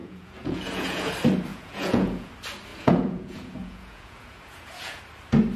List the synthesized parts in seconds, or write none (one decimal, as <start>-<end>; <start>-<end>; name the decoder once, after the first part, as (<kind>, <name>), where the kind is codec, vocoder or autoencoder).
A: 0.0-1.1 (vocoder, Vocos); 1.5-2.3; 2.7-5.0